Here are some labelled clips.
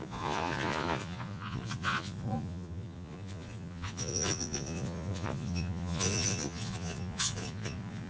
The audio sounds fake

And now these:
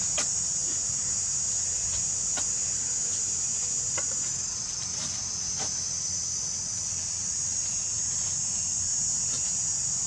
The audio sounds real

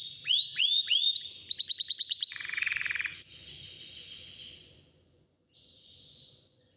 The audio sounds fake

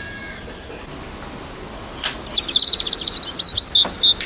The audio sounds real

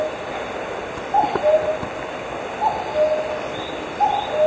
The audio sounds real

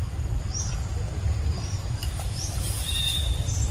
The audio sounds fake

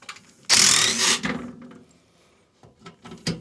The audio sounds real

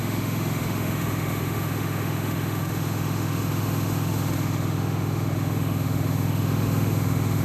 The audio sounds fake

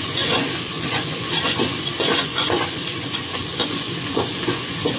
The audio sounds fake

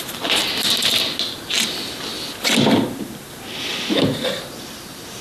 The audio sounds real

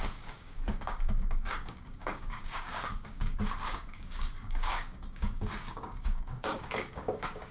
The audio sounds fake